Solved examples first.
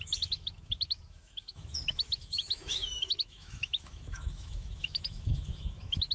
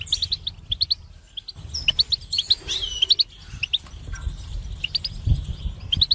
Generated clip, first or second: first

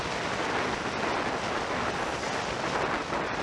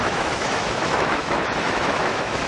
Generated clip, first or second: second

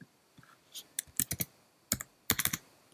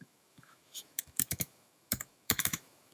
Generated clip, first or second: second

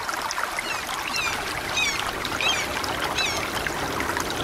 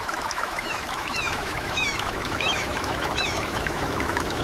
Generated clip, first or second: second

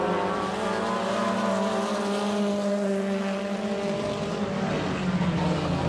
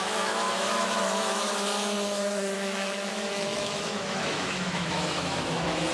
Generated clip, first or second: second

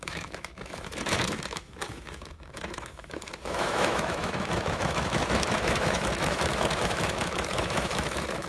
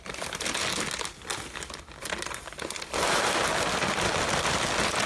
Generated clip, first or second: first